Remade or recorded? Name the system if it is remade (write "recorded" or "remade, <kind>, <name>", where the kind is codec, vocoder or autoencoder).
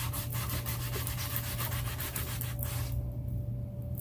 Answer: recorded